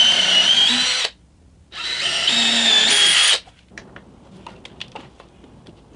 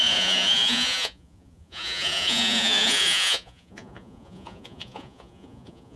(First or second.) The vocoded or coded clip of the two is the second